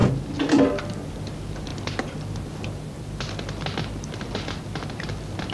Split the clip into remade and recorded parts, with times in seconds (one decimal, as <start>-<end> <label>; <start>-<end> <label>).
0.0-5.5 recorded